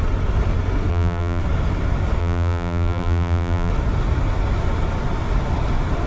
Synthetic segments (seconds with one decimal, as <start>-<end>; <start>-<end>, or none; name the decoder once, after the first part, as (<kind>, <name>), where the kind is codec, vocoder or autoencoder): 0.9-1.4 (vocoder, BigVGAN v2); 2.2-3.7